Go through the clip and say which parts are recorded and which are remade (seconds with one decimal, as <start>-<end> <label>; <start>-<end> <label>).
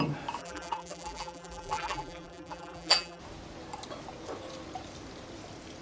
0.0-0.4 recorded; 0.4-3.2 remade; 3.2-5.8 recorded